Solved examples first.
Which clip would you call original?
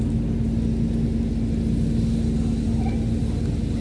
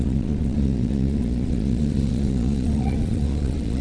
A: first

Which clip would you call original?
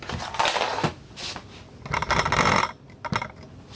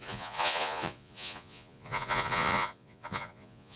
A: first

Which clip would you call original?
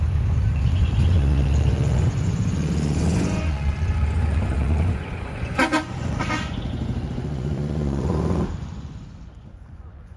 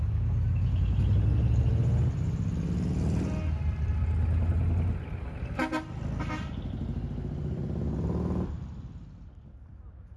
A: second